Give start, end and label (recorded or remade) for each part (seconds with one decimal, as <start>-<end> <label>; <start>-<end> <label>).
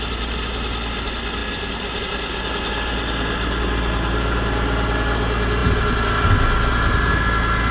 0.0-7.7 recorded